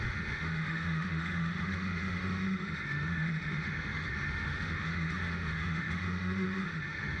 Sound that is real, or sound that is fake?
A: fake